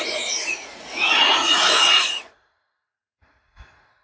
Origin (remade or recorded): remade